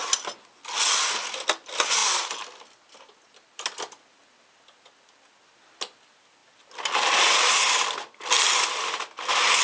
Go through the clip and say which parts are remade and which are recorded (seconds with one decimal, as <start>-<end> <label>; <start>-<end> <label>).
0.0-9.6 recorded